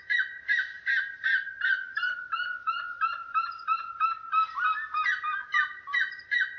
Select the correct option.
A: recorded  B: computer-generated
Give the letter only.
A